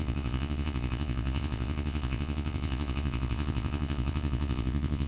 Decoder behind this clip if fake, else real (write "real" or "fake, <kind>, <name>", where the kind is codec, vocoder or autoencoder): fake, vocoder, Vocos